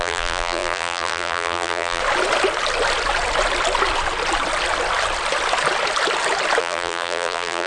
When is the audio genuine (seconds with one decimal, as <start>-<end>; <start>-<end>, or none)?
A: 2.0-6.6